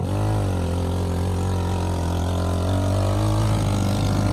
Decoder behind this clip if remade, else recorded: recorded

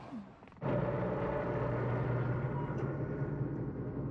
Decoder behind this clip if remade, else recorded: recorded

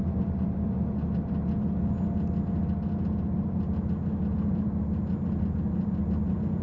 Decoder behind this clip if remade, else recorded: recorded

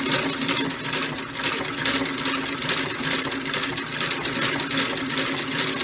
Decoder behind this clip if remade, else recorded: recorded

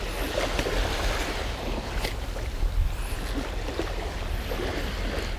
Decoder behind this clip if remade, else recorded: recorded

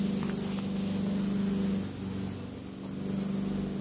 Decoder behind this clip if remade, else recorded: recorded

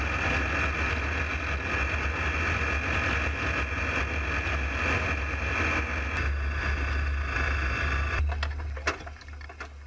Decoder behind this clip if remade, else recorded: recorded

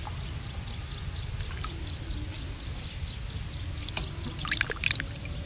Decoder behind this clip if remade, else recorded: recorded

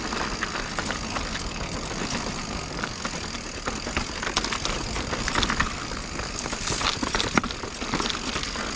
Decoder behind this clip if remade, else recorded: recorded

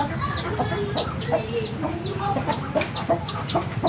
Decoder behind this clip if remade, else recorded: recorded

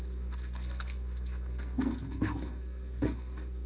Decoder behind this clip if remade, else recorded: remade, codec, SNAC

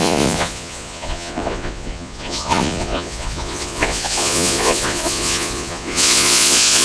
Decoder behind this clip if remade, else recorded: remade, vocoder, Vocos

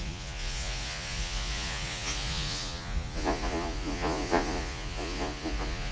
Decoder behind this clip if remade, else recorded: remade, vocoder, Vocos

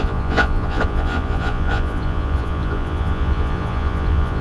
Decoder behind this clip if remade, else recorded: remade, vocoder, Vocos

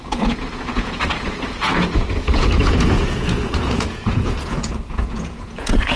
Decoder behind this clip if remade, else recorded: remade, vocoder, Vocos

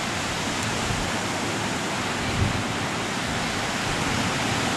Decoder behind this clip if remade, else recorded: recorded